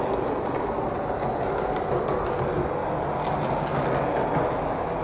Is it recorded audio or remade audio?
recorded